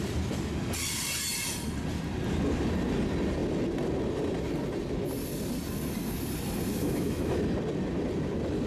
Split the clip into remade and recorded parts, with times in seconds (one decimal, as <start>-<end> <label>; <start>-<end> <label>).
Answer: 0.0-6.7 recorded; 6.7-7.4 remade; 7.4-8.7 recorded